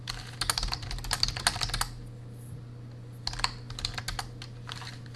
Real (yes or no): yes